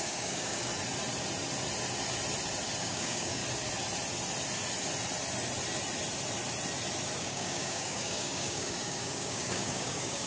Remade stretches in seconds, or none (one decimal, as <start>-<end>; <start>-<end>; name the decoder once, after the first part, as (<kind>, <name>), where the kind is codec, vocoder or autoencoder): 0.0-0.7 (codec, DAC); 2.8-3.4; 7.2-10.3